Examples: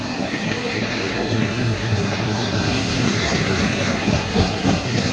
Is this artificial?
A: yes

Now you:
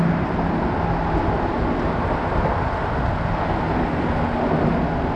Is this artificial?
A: no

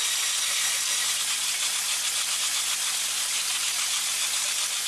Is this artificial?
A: no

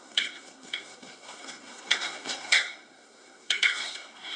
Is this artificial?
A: yes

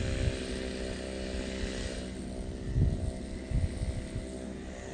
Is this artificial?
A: no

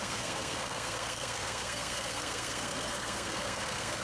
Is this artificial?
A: yes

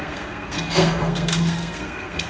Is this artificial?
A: yes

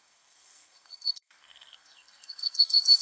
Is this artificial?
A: yes